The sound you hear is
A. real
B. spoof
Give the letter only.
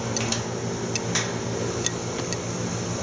A